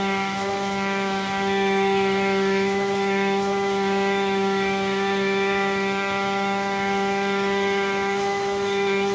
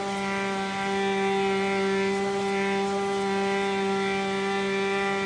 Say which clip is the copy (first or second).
first